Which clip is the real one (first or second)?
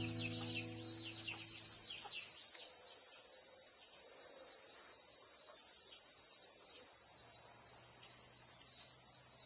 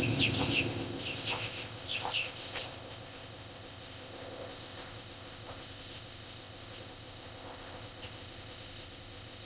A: first